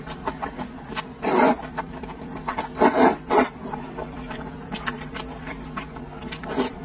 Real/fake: fake